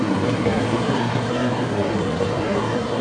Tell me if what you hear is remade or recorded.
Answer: remade